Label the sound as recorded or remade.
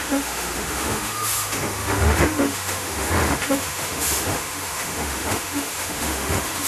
remade